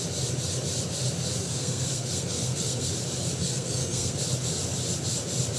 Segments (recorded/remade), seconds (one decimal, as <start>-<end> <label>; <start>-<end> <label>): 0.0-1.4 recorded; 1.4-2.9 remade; 2.9-3.4 recorded; 3.4-4.2 remade; 4.2-5.6 recorded